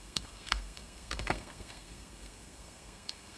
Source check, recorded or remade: remade